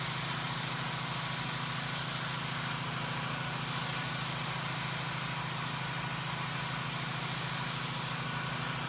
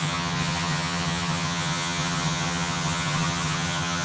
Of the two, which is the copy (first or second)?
second